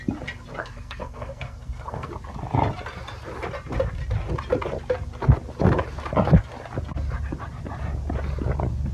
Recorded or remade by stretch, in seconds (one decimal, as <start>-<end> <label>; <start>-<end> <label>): 0.0-0.6 recorded; 0.6-2.1 remade; 2.1-8.9 recorded